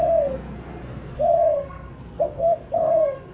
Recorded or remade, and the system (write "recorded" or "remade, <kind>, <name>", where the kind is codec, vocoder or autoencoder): remade, codec, SNAC